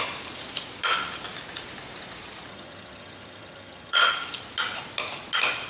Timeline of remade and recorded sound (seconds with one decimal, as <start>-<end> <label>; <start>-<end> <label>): 0.0-2.5 recorded; 2.5-4.1 remade; 4.1-5.7 recorded